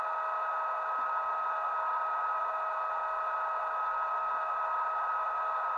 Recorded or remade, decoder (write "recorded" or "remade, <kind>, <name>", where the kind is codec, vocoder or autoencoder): recorded